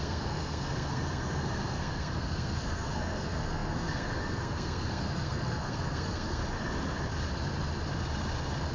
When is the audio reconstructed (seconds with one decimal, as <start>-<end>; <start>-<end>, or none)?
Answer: 0.0-6.4